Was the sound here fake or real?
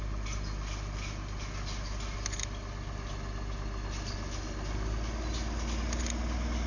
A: real